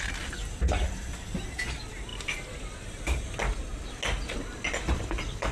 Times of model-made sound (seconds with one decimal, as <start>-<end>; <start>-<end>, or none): none